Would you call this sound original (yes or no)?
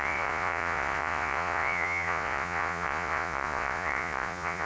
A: no